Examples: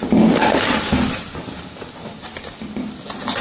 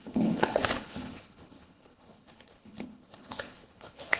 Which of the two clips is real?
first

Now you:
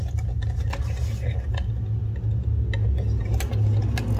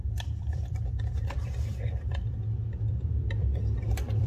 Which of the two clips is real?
first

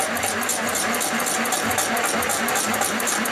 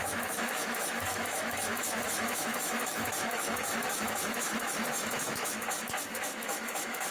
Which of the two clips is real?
first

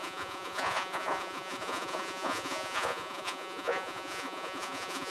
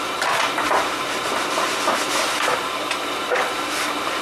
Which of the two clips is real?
second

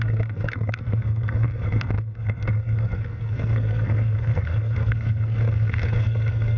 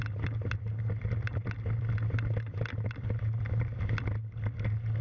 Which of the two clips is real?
second